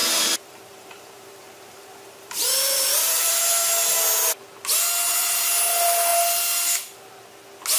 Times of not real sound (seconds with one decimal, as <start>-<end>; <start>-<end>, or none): 0.0-3.4